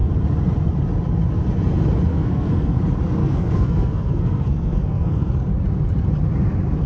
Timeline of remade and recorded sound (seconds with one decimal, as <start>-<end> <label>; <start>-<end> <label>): 0.0-2.1 recorded; 2.1-2.8 remade; 2.8-3.2 recorded; 3.2-5.3 remade; 5.3-6.9 recorded